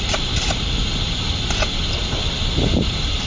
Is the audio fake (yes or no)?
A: no